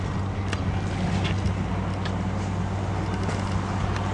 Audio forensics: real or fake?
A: real